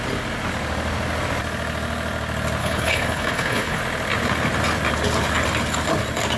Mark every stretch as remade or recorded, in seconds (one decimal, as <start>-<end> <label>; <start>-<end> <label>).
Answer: 0.0-2.6 recorded; 2.6-3.8 remade; 3.8-6.4 recorded